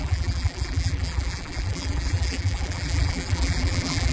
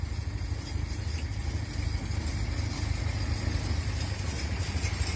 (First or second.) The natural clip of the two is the second